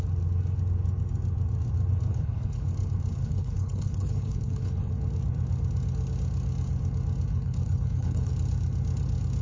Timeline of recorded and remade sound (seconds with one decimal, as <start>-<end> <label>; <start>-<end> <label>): 0.0-2.1 recorded; 2.1-2.7 remade; 2.7-3.2 recorded; 3.2-4.9 remade; 4.9-7.3 recorded; 7.3-8.3 remade; 8.3-9.4 recorded